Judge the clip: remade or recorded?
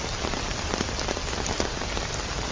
recorded